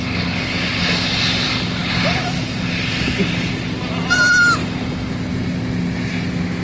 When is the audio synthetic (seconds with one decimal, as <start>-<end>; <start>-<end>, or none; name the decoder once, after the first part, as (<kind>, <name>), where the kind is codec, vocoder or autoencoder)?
none